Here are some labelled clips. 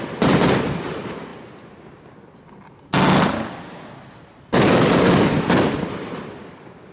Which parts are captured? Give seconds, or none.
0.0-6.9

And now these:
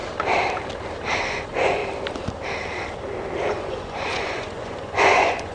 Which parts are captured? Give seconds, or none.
0.0-1.2; 1.8-3.5

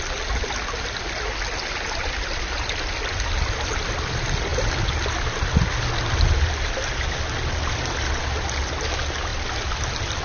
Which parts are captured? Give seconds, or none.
0.0-10.2

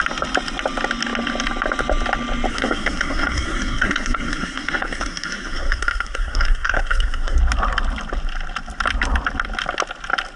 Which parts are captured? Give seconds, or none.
0.0-2.5; 7.4-10.4

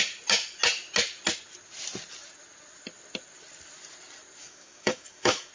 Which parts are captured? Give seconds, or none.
0.0-4.4